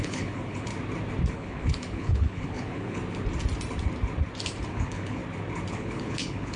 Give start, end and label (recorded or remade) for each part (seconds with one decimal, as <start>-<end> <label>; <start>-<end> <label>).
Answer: 0.0-0.7 remade; 0.7-1.3 recorded; 1.3-3.0 remade; 3.0-4.7 recorded; 4.7-5.2 remade; 5.2-5.7 recorded; 5.7-6.6 remade